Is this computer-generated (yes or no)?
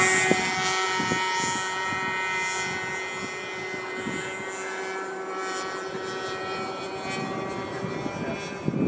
no